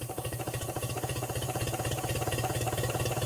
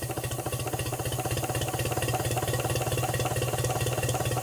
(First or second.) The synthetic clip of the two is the first